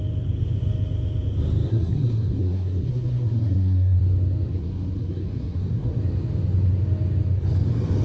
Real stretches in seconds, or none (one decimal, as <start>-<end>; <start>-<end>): 0.0-1.7; 4.0-4.5; 6.0-8.0